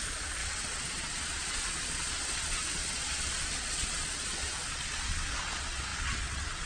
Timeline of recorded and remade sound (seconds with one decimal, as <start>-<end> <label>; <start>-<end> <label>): 0.0-6.7 remade